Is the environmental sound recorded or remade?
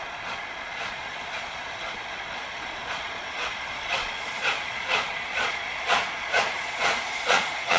remade